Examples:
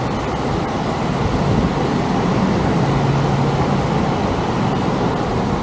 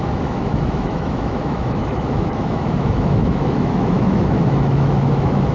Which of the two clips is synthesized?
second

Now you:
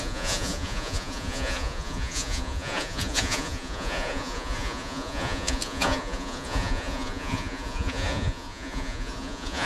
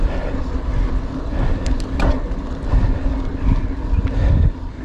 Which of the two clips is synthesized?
first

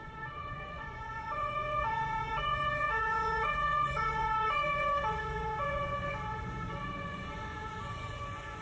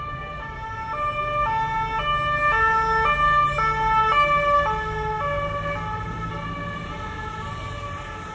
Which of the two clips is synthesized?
first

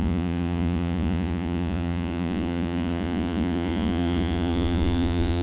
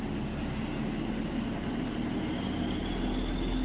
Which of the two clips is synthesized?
first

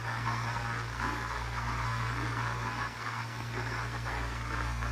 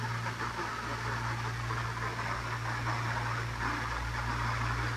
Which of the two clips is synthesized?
first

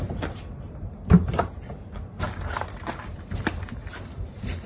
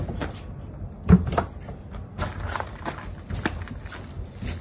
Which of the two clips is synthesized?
first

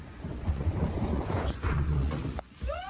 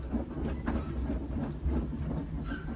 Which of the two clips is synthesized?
first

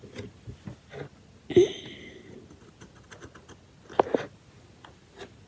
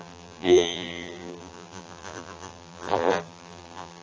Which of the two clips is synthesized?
second